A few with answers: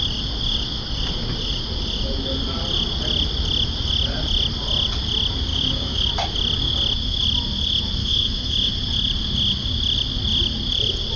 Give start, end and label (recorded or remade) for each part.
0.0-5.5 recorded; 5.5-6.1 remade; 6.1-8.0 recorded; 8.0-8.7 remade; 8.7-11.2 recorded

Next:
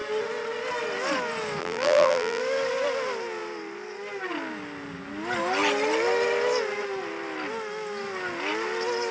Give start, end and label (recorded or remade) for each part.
0.0-1.6 recorded; 1.6-2.4 remade; 2.4-9.1 recorded